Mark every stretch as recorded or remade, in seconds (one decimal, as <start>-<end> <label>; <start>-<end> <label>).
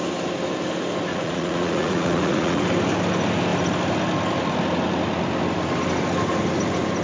0.0-1.1 recorded; 1.1-2.6 remade; 2.6-7.0 recorded